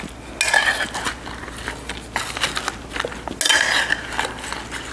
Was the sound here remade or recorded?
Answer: recorded